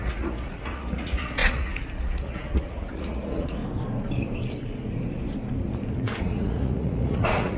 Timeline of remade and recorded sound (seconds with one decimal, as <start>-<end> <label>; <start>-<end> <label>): 0.0-3.6 remade; 3.6-6.2 recorded; 6.2-7.6 remade